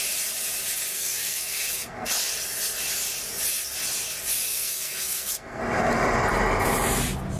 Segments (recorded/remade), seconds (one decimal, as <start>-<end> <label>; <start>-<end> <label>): 0.0-0.9 recorded; 0.9-2.1 remade; 2.1-4.5 recorded; 4.5-5.6 remade; 5.6-7.4 recorded